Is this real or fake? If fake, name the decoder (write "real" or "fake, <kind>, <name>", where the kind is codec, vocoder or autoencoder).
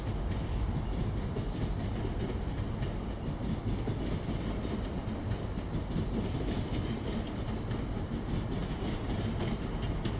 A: real